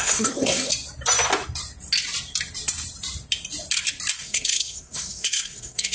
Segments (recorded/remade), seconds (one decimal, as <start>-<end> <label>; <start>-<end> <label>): 0.0-0.7 remade; 0.7-4.2 recorded; 4.2-5.9 remade